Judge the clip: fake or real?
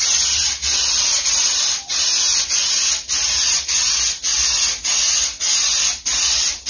real